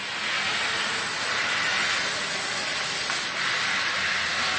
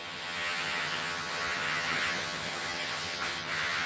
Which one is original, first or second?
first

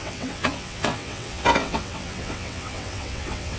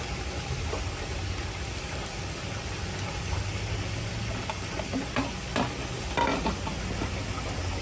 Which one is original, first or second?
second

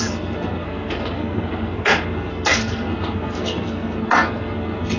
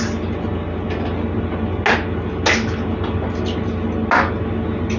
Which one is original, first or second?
second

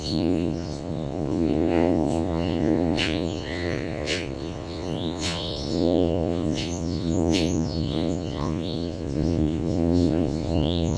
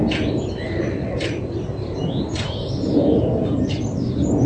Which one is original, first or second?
second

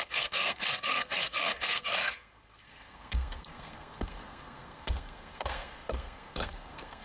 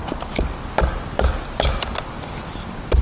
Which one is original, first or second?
second